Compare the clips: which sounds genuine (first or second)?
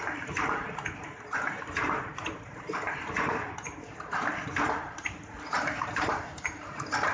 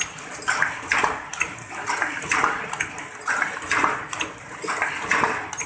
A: second